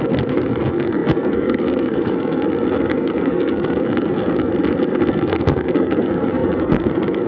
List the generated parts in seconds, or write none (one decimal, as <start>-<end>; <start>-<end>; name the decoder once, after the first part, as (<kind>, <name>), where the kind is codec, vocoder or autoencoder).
0.0-4.5 (codec, SNAC); 5.1-7.3